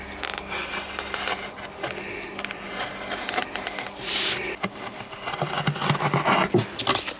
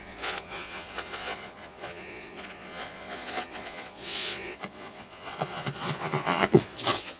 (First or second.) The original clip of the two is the first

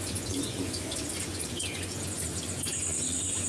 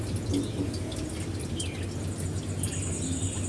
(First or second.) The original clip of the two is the second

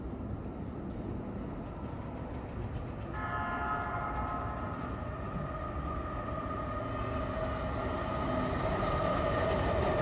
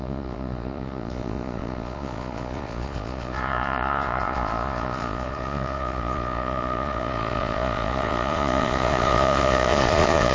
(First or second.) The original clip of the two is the first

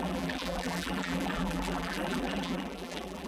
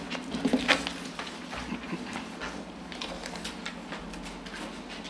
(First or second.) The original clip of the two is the second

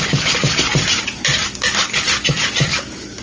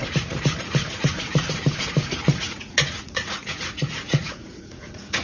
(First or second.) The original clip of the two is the first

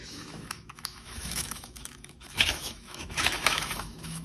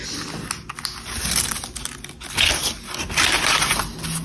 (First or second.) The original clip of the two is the second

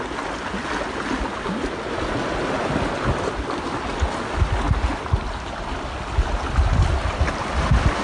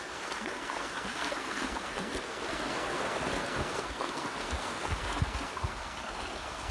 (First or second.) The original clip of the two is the first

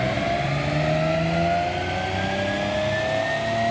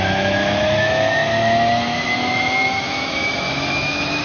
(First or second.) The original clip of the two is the first